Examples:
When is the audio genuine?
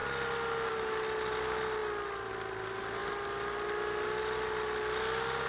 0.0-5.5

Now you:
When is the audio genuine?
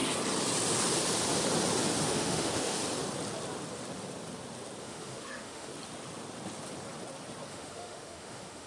0.0-2.0; 2.8-4.8; 5.7-7.5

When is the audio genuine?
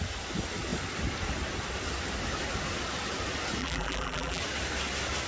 0.0-3.6; 4.4-5.3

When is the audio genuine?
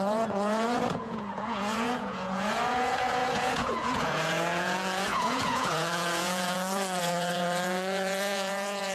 none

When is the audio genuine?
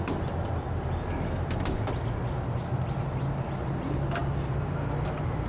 0.0-5.5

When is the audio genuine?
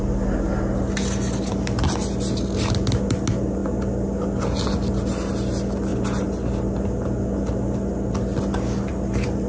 0.0-9.5